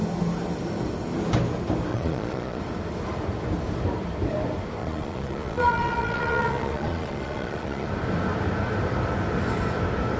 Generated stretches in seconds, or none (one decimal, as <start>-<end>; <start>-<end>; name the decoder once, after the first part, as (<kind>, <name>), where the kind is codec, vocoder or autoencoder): 1.9-2.6 (vocoder, Vocos); 4.8-7.9